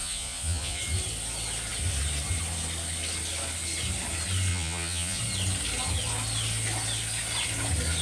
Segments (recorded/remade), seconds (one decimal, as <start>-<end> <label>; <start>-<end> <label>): 0.0-0.8 remade; 0.8-4.5 recorded; 4.5-5.2 remade; 5.2-8.0 recorded